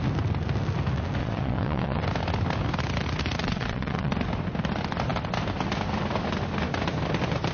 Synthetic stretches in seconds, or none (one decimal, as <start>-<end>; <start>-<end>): 1.2-2.0; 3.4-4.1